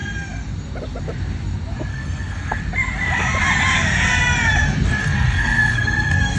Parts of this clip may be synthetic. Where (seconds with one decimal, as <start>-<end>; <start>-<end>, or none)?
1.9-2.6; 5.0-6.4